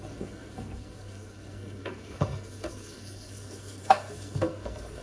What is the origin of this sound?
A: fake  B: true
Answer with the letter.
A